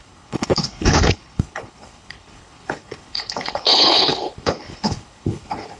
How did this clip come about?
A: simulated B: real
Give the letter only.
A